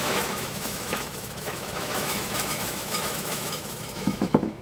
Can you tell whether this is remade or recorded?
remade